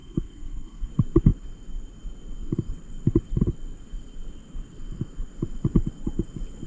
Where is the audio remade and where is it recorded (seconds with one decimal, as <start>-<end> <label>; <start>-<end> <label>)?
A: 0.0-0.9 remade; 0.9-6.7 recorded